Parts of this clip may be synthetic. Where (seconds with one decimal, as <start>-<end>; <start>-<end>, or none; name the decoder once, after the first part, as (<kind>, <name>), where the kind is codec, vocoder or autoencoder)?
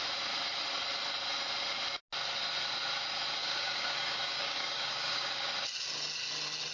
3.4-5.5 (codec, DAC)